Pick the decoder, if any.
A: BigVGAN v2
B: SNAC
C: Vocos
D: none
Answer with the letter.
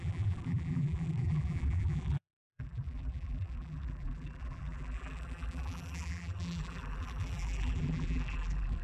A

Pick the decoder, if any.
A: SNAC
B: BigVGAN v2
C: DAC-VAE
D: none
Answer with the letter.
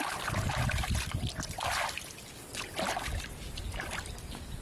D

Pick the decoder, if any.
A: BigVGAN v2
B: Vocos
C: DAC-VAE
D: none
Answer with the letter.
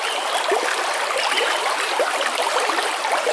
D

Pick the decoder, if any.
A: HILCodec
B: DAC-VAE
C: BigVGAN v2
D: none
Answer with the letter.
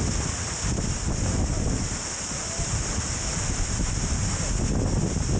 D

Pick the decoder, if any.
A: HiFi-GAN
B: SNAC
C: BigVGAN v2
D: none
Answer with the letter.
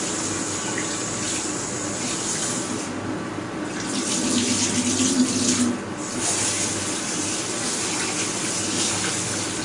D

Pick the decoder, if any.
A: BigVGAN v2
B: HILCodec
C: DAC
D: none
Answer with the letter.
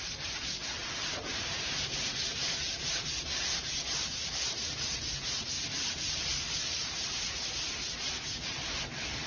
A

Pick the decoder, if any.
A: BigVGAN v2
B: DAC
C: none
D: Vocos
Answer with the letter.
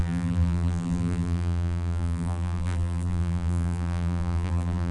A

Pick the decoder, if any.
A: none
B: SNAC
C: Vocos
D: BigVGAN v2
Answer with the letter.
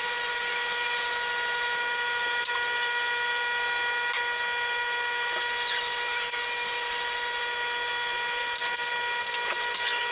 A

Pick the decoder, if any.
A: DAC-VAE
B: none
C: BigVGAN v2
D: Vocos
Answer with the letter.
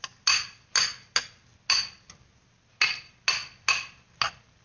B